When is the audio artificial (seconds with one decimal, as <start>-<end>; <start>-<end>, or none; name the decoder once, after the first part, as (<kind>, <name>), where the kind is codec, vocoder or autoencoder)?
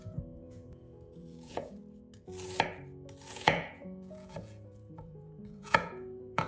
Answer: 0.0-1.8 (vocoder, Vocos); 3.3-6.5